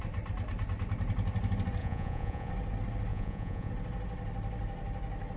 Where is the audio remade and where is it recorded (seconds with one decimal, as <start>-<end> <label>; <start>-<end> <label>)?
0.0-1.8 recorded; 1.8-2.5 remade; 2.5-3.1 recorded; 3.1-3.7 remade; 3.7-5.4 recorded